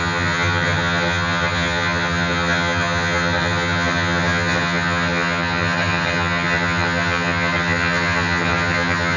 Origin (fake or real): fake